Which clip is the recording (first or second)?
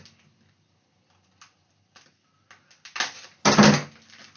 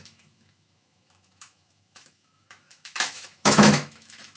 first